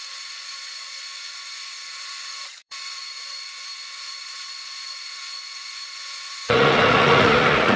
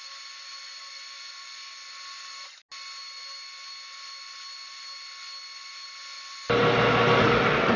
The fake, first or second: first